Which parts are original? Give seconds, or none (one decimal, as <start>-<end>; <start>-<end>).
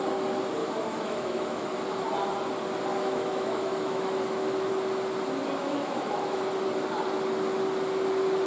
0.0-0.6; 1.7-2.9; 4.7-5.6; 6.4-8.5